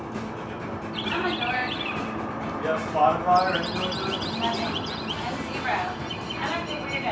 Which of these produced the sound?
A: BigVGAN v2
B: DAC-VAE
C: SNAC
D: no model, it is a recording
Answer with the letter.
D